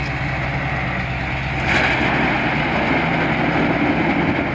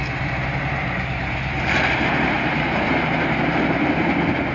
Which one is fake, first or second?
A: second